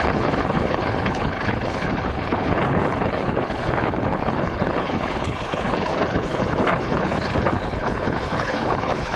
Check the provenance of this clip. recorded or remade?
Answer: remade